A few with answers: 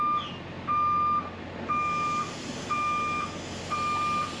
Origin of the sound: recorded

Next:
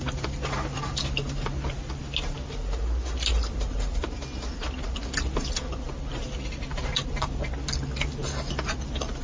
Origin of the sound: recorded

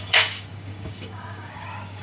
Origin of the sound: remade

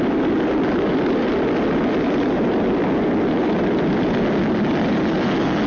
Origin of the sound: recorded